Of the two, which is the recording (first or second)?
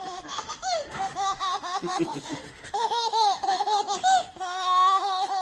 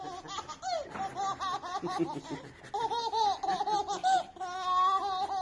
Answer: second